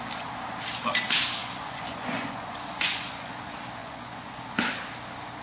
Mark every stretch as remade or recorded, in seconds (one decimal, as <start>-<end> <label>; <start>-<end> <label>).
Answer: 0.0-1.4 recorded; 1.4-3.3 remade; 3.3-3.8 recorded; 3.8-4.4 remade; 4.4-5.4 recorded